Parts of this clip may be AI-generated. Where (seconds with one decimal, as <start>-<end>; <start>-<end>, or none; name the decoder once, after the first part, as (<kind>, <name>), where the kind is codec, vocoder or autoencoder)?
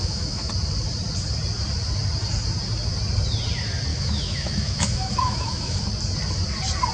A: 0.0-0.5 (autoencoder, DAC-VAE); 3.9-5.8